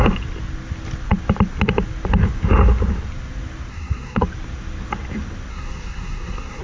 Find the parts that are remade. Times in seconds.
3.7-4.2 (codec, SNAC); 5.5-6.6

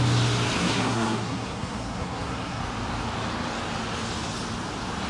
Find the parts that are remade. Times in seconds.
0.6-2.6 (codec, SNAC)

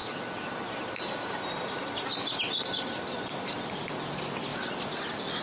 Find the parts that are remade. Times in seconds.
none

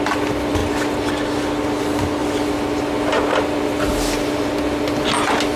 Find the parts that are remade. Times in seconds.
none

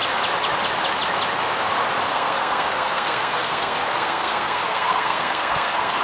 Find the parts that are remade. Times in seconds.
2.1-6.0 (codec, SNAC)

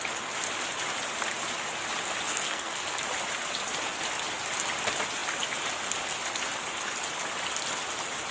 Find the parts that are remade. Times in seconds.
2.3-3.0 (codec, SNAC)